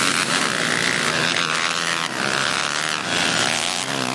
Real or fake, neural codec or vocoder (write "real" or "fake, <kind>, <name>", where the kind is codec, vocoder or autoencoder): real